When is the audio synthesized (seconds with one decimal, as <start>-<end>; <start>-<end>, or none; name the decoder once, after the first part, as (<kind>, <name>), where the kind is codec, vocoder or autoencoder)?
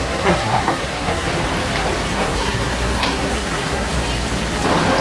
0.0-1.3 (codec, SNAC); 2.1-3.9